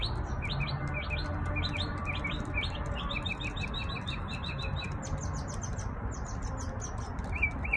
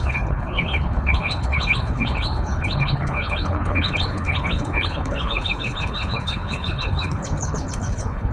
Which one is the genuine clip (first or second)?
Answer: first